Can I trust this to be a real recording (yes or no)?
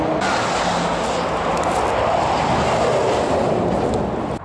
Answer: yes